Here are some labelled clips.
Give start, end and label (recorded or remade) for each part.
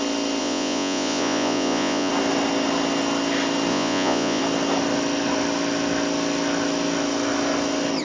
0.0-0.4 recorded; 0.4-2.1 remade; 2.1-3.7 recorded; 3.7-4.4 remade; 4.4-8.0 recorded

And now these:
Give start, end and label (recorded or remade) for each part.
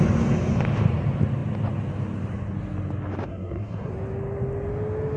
0.0-3.3 recorded; 3.3-3.9 remade; 3.9-5.2 recorded